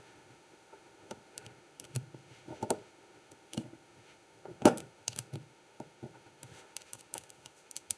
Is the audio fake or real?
fake